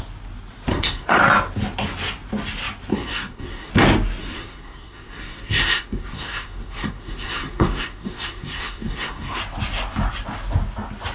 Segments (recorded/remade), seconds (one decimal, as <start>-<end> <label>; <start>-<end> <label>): 0.0-0.7 recorded; 0.7-1.2 remade; 1.2-2.9 recorded; 2.9-3.7 remade; 3.7-4.2 recorded; 4.2-9.4 remade; 9.4-11.1 recorded